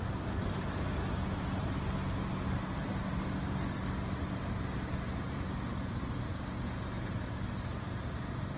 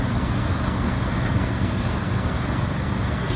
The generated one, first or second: second